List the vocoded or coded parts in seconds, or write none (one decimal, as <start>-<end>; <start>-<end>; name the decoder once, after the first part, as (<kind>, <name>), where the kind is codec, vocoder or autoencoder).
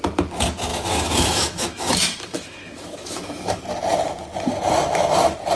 0.7-3.6 (autoencoder, DAC-VAE)